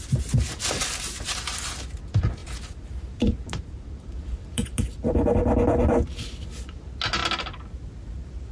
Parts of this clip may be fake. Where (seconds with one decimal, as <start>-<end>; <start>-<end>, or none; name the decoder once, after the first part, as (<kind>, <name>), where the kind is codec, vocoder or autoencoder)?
2.4-5.3 (vocoder, BigVGAN v2)